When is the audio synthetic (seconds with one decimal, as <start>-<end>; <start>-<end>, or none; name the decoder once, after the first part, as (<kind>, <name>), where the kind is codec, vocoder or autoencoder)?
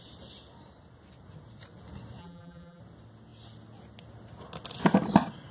2.2-2.8 (vocoder, BigVGAN v2)